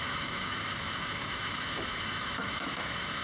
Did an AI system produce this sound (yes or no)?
yes